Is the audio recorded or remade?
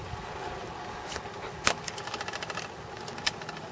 recorded